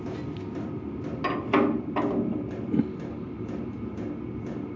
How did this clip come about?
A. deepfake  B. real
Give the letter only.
B